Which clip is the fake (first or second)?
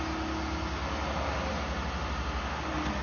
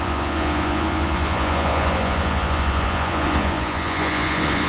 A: second